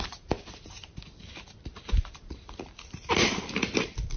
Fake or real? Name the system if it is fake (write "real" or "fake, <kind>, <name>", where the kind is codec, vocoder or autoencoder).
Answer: fake, vocoder, BigVGAN v2